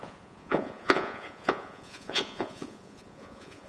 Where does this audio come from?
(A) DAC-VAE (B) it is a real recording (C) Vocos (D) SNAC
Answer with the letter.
C